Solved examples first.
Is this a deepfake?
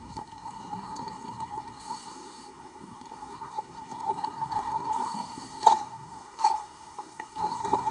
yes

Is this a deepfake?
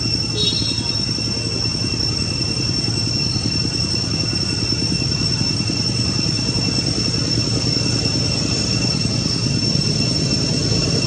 no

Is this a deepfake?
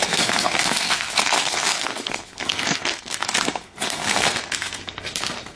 yes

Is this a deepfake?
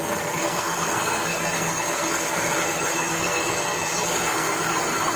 yes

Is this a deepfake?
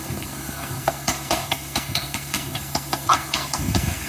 yes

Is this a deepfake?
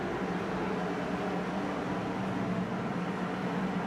no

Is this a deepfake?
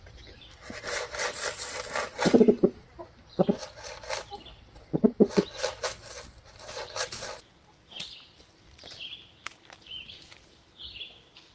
no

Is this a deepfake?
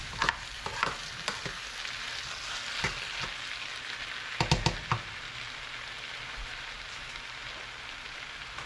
no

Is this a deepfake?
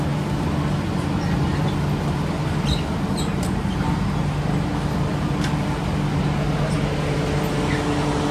no